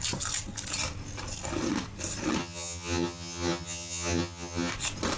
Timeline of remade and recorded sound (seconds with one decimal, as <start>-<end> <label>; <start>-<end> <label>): 0.0-2.4 recorded; 2.4-4.7 remade; 4.7-5.2 recorded